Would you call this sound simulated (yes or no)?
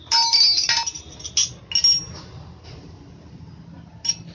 no